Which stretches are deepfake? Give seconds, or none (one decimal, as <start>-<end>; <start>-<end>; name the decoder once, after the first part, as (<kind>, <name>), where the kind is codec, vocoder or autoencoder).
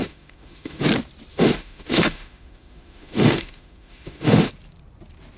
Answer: 0.0-0.8 (autoencoder, DAC-VAE); 1.3-4.5